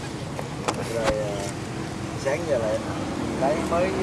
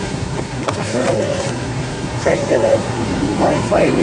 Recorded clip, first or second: first